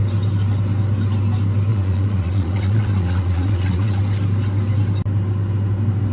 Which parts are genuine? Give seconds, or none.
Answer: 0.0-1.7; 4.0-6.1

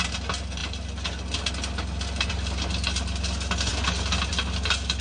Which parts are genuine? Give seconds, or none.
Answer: 0.0-5.0